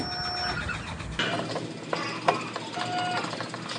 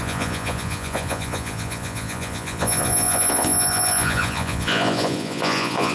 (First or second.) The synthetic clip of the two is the second